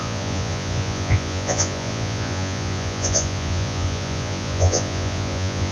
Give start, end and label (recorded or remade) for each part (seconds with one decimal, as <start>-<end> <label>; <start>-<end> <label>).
0.0-5.7 remade